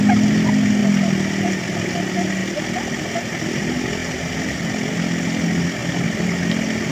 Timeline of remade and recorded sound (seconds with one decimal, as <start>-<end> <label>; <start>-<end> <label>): 0.0-0.8 recorded; 0.8-1.6 remade; 1.6-2.4 recorded; 2.4-3.1 remade; 3.1-4.0 recorded; 4.0-4.7 remade; 4.7-6.9 recorded